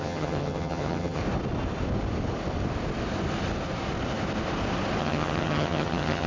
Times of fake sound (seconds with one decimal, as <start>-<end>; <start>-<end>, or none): 0.0-1.2; 5.0-6.3